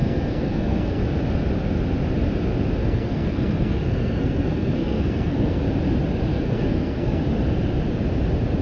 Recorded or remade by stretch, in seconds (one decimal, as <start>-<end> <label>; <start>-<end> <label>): 0.0-1.0 remade; 1.0-2.8 recorded; 2.8-5.6 remade; 5.6-6.3 recorded; 6.3-7.2 remade; 7.2-8.6 recorded